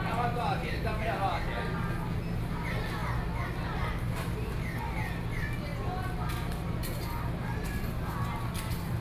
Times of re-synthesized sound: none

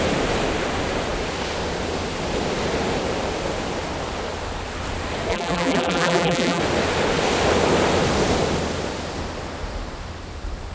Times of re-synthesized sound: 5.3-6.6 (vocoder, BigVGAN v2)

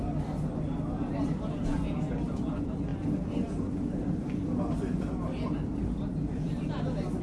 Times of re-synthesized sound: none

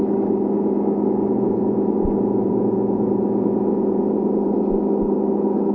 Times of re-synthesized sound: 1.3-4.7 (vocoder, Vocos)